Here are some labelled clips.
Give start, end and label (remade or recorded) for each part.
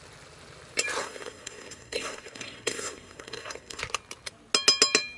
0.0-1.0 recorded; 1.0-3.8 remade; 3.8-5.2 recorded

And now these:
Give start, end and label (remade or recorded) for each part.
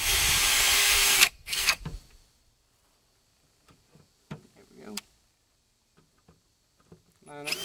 0.0-0.5 recorded; 0.5-1.8 remade; 1.8-7.6 recorded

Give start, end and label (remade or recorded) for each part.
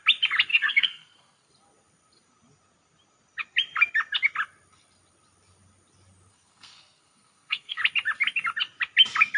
0.0-0.5 recorded; 0.5-1.5 remade; 1.5-6.3 recorded; 6.3-7.8 remade; 7.8-9.4 recorded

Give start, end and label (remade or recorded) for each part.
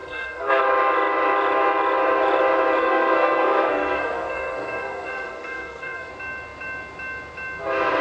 0.0-0.6 remade; 0.6-2.8 recorded; 2.8-6.1 remade; 6.1-8.0 recorded